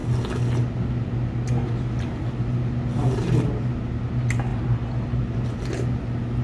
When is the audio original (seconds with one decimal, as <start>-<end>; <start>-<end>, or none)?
0.0-6.4